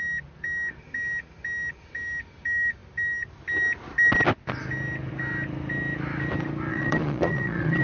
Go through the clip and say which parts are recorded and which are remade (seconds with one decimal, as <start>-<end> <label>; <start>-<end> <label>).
0.0-6.7 recorded; 6.7-7.8 remade